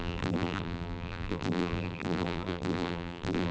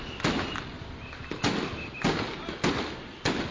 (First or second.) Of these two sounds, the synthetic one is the first